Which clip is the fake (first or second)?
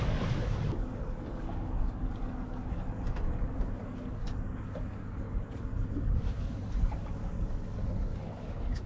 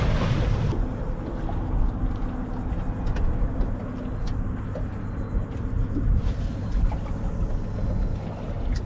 first